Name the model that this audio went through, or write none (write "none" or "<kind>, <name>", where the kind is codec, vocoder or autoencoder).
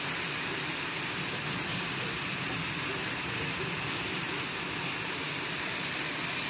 none